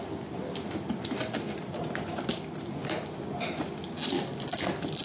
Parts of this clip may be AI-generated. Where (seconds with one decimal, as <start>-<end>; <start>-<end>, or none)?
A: none